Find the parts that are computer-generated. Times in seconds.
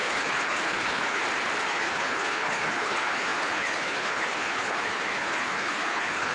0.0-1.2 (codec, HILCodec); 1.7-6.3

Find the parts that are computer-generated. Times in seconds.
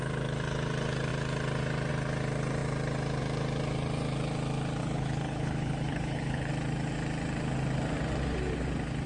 4.8-6.5 (codec, HILCodec)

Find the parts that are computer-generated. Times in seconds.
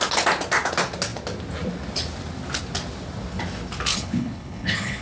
3.9-5.0 (codec, HILCodec)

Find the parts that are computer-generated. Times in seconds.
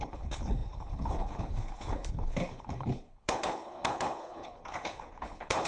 0.0-5.7 (codec, HILCodec)